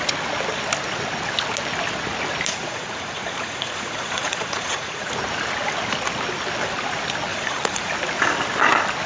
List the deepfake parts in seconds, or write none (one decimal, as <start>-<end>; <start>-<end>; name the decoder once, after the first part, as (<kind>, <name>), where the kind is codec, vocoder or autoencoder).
2.5-5.1 (vocoder, Vocos); 7.3-7.9